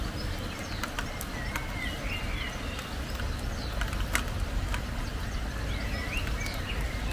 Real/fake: real